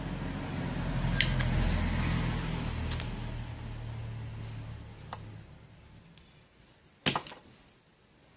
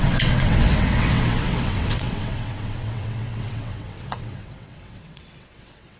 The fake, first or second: second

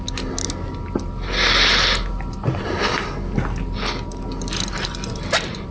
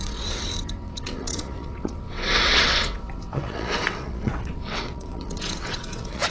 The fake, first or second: second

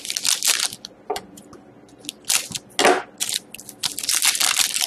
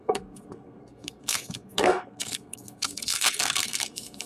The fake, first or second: second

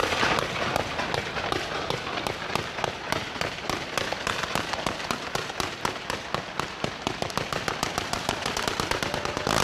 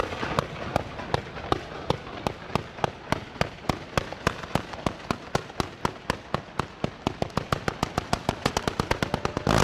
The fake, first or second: first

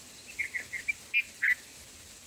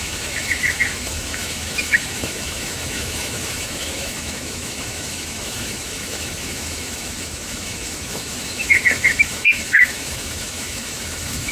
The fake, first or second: second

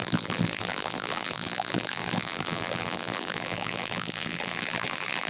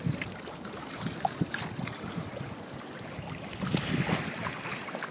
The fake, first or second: first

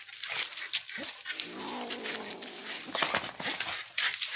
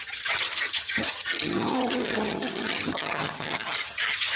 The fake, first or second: second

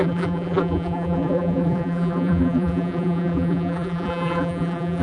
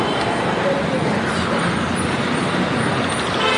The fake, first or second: first